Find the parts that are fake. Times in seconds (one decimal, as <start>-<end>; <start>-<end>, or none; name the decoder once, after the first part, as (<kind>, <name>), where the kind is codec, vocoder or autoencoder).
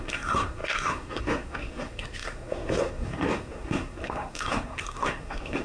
0.0-5.6 (codec, SNAC)